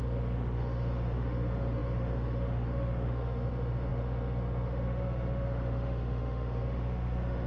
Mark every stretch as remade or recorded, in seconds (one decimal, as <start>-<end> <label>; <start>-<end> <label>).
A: 0.0-7.5 remade